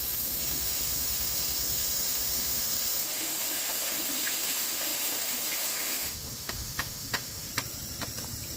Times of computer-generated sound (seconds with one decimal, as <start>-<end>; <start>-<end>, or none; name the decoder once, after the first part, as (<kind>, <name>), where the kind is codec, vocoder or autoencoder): 0.0-7.5 (autoencoder, DAC-VAE)